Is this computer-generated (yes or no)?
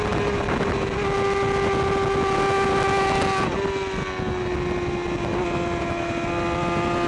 no